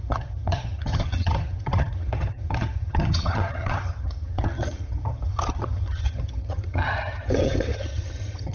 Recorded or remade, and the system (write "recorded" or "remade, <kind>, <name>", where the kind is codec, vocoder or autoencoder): remade, vocoder, HiFi-GAN